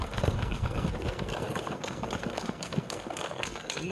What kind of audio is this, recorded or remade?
remade